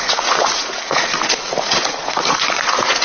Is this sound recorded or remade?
remade